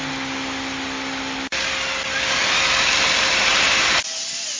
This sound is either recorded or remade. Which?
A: recorded